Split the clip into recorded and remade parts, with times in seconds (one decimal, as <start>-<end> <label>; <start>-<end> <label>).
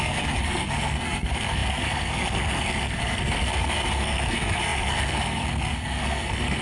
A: 0.0-6.6 remade